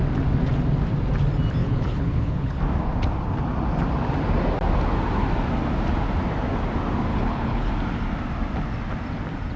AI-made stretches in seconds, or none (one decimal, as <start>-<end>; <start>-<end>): 1.6-2.6; 7.1-7.7